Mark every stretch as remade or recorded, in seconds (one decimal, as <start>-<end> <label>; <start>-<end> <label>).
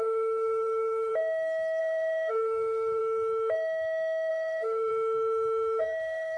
0.0-1.1 remade; 1.1-1.8 recorded; 1.8-3.0 remade; 3.0-4.3 recorded; 4.3-4.9 remade; 4.9-5.8 recorded; 5.8-6.4 remade